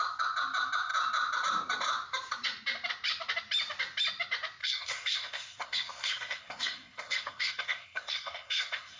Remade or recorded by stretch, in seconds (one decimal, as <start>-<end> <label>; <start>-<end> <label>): 0.0-4.6 recorded; 4.6-9.0 remade